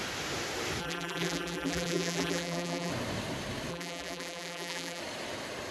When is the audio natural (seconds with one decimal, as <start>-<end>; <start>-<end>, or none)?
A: 0.0-0.8; 2.9-3.7; 5.0-5.7